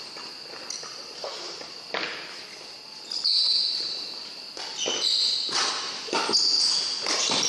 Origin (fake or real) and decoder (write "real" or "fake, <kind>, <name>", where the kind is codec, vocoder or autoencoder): real